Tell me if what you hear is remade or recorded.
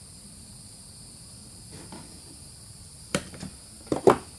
remade